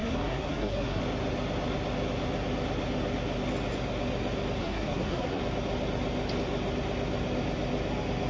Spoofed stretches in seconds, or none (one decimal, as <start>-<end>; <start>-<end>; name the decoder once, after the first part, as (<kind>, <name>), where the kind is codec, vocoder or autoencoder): 0.0-1.0 (codec, SNAC); 4.6-5.4